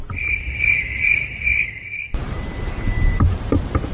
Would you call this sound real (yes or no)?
no